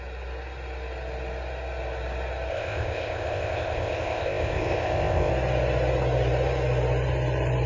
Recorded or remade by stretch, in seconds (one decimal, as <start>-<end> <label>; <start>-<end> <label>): 0.0-2.5 recorded; 2.5-5.3 remade; 5.3-7.7 recorded